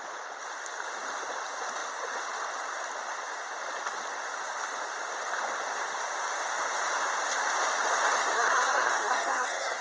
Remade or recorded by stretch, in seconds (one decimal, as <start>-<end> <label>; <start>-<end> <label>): 0.0-8.2 recorded; 8.2-9.8 remade